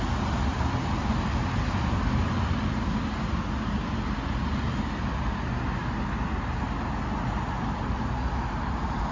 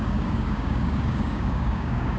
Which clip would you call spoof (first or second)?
second